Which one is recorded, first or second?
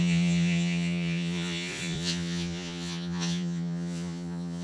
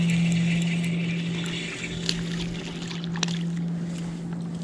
second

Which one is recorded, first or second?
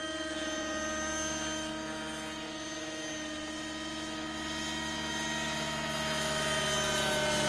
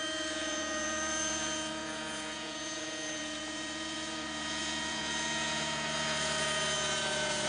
first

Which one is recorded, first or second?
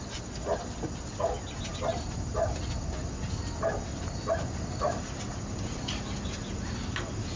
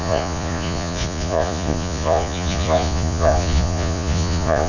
first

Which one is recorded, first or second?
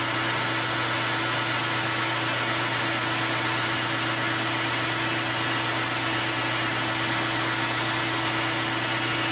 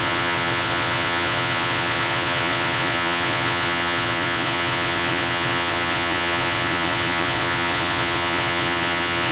first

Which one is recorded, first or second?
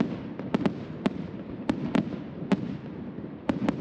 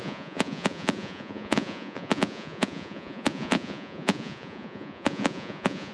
first